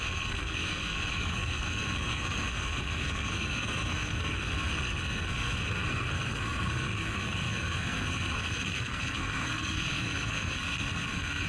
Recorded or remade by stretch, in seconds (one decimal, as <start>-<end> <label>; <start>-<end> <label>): 0.0-11.5 remade

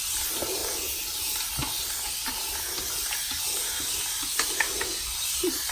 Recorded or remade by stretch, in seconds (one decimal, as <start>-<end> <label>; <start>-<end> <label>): 0.0-5.7 recorded

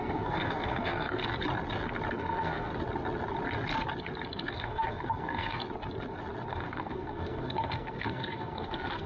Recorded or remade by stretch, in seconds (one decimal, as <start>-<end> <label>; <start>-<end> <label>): 0.0-1.2 remade; 1.2-2.1 recorded; 2.1-2.7 remade; 2.7-4.5 recorded; 4.5-5.6 remade; 5.6-6.5 recorded; 6.5-9.1 remade

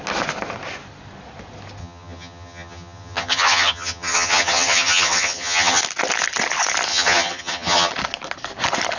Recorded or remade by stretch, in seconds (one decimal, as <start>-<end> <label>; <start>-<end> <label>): 0.0-1.8 recorded; 1.8-5.8 remade; 5.8-6.9 recorded; 6.9-7.9 remade; 7.9-9.0 recorded

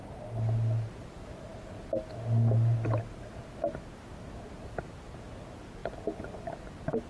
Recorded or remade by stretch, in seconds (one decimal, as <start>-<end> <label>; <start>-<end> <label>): 0.0-7.1 recorded

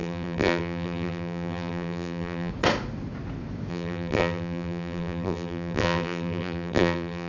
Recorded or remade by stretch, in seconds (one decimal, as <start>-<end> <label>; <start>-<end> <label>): 0.0-2.5 remade; 2.5-3.7 recorded; 3.7-7.3 remade

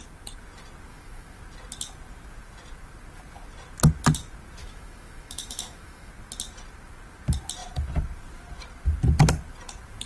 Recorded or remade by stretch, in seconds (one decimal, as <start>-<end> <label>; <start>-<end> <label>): 0.0-0.9 recorded; 0.9-1.4 remade; 1.4-4.6 recorded; 4.6-6.1 remade; 6.1-10.1 recorded